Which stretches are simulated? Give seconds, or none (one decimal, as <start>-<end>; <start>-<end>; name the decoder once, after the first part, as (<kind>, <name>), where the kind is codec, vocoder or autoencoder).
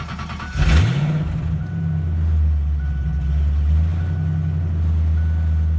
none